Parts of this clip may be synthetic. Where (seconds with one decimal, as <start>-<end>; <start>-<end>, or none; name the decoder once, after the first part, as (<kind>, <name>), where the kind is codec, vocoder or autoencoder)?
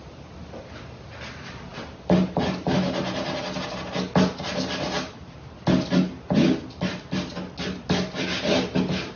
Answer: none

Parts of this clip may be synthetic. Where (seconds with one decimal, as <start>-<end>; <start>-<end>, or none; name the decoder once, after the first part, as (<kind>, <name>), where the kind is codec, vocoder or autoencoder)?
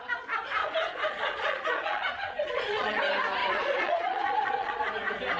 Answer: 0.6-3.0 (vocoder, Vocos); 3.4-4.8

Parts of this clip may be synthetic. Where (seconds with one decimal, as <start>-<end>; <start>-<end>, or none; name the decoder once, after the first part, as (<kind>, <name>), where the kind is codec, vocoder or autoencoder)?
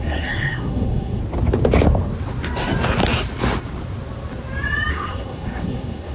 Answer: 0.0-1.2 (codec, SNAC); 4.9-6.1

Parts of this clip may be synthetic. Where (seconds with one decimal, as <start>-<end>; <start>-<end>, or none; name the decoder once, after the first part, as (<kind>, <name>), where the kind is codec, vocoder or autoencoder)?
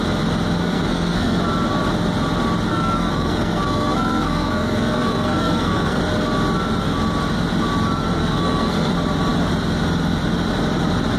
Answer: 0.6-1.4 (codec, SNAC); 2.7-6.0; 8.2-8.9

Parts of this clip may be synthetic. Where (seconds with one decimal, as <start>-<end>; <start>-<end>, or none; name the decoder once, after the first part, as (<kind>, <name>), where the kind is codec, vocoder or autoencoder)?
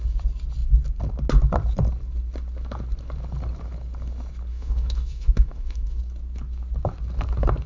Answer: 4.5-6.0 (autoencoder, DAC-VAE)